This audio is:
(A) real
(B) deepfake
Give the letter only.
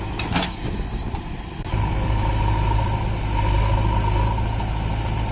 A